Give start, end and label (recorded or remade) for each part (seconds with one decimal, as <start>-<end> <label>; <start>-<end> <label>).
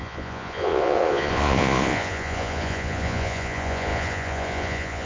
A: 0.0-5.1 remade